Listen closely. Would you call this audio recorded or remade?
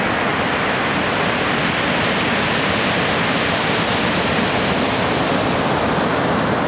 recorded